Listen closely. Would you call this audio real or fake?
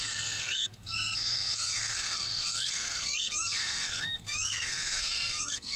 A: fake